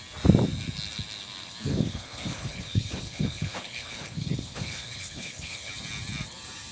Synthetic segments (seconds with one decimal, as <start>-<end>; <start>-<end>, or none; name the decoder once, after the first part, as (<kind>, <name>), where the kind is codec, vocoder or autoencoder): 1.7-5.7 (codec, HILCodec)